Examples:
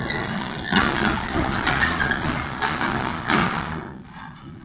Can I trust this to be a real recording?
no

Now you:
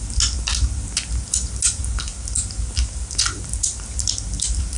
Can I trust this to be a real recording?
yes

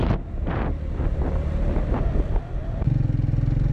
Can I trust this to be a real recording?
yes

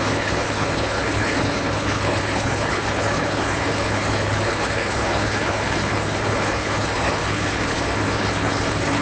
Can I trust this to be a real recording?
no